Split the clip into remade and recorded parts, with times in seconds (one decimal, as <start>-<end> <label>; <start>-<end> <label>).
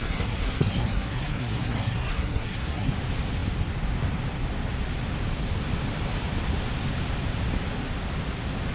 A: 0.0-2.9 remade; 2.9-8.7 recorded